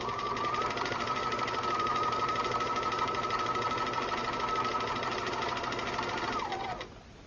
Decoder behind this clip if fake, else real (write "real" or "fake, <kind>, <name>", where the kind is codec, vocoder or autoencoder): real